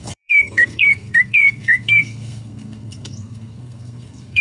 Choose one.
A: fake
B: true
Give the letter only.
A